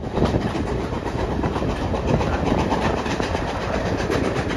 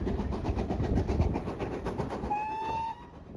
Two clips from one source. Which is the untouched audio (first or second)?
second